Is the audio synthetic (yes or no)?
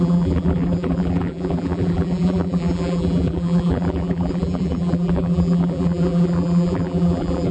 yes